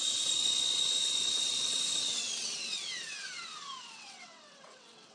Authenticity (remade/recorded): remade